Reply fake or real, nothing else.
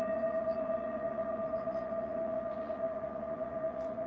fake